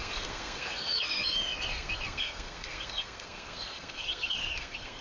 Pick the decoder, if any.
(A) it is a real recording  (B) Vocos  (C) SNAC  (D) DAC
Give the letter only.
C